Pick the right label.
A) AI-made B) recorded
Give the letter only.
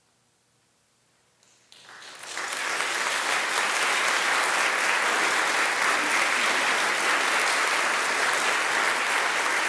B